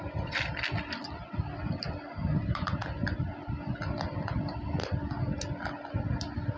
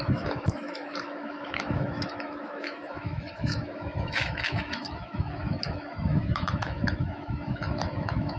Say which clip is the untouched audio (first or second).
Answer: first